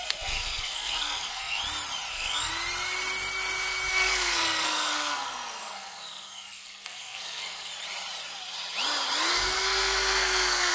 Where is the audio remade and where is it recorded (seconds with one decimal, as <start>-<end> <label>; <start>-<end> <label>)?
0.0-1.6 remade; 1.6-2.1 recorded; 2.1-2.5 remade; 2.5-3.9 recorded; 3.9-7.7 remade; 7.7-9.3 recorded; 9.3-10.7 remade